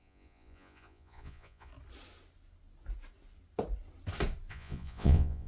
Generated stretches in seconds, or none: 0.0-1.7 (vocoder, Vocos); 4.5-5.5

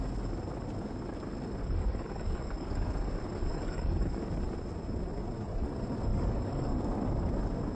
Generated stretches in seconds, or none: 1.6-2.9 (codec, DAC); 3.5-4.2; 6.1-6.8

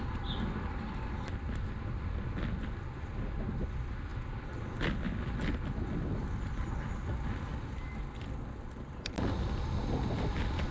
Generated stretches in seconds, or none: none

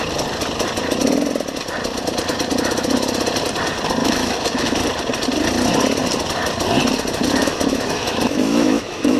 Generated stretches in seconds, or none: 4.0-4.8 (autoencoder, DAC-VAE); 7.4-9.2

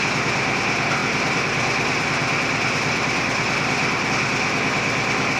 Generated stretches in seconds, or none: 1.0-4.1 (vocoder, BigVGAN v2)

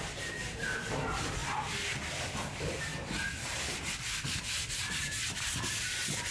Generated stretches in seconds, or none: none